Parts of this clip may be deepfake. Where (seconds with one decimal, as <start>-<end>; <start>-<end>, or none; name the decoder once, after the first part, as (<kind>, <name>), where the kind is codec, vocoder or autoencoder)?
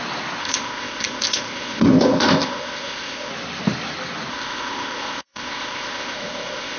0.4-3.3 (codec, ZipCodec); 4.3-6.8